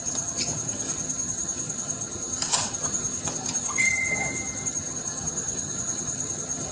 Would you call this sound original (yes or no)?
no